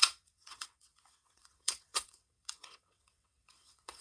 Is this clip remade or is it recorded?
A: remade